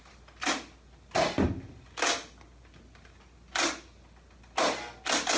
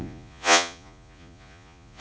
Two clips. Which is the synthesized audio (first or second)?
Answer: second